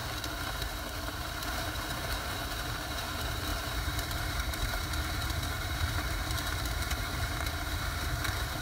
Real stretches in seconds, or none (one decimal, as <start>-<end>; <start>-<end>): 0.0-0.5